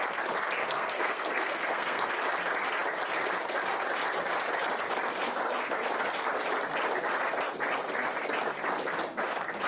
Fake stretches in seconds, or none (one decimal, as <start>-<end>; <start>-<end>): 0.6-2.1